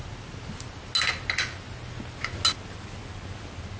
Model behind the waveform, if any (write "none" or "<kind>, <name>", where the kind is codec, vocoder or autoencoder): none